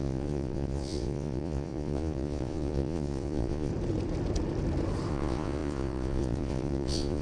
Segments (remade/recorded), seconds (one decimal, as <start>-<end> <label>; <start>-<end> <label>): 0.0-3.7 remade; 3.7-5.1 recorded; 5.1-7.2 remade

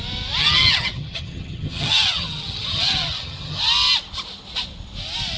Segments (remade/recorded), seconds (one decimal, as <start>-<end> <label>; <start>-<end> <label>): 0.0-0.4 recorded; 0.4-3.6 remade; 3.6-5.4 recorded